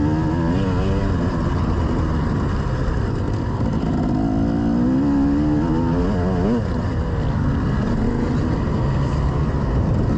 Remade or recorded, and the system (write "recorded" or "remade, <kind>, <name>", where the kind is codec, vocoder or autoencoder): recorded